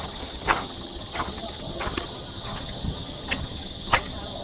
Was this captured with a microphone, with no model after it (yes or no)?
no